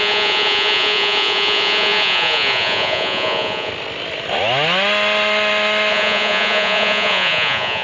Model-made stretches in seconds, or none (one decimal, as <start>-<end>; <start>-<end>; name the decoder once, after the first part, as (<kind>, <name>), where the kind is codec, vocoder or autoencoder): 0.0-3.7 (vocoder, Vocos); 5.9-7.8